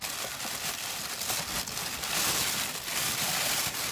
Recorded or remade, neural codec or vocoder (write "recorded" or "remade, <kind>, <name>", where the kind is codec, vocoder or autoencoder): recorded